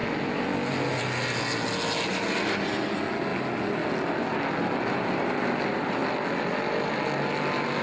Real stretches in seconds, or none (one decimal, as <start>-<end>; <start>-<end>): 0.0-2.1; 2.6-7.8